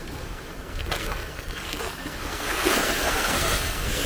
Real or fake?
fake